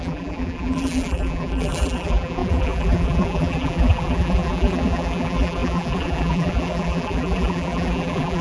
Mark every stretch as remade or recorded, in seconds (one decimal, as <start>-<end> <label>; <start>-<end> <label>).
0.0-8.4 remade